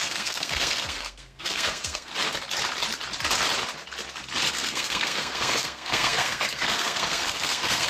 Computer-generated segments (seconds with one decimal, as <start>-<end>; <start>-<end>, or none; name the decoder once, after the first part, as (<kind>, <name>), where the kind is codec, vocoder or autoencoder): 0.0-2.1 (codec, SNAC); 4.5-7.9

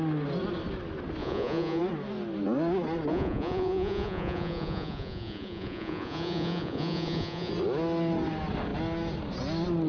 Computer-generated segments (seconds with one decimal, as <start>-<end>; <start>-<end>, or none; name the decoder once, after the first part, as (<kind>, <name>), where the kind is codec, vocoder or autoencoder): 1.2-1.8 (vocoder, Vocos); 3.1-7.5

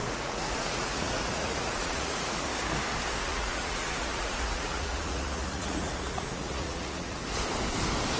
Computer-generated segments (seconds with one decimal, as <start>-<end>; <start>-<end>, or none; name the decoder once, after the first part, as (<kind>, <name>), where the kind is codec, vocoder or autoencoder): 0.0-2.5 (vocoder, Vocos); 3.2-7.2